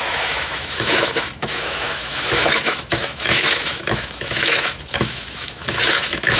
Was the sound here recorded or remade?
remade